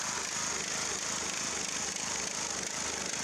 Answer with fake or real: real